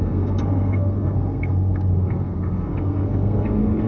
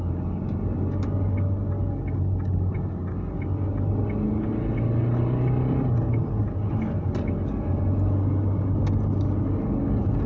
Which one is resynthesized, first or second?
first